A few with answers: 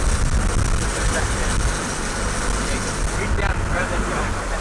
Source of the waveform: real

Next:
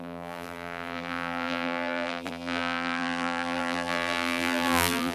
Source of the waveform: fake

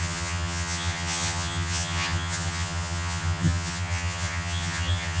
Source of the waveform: fake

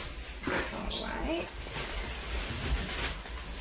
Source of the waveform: real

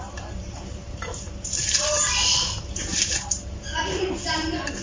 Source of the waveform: fake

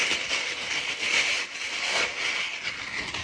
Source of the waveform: real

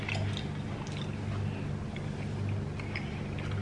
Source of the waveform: real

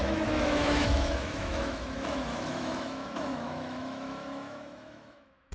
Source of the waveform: fake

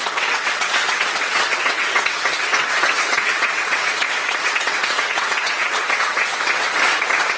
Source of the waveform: fake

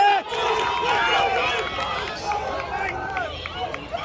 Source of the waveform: real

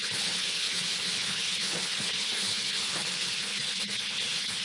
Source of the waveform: fake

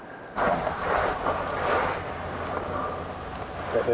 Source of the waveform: real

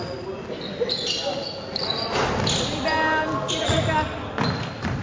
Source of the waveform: real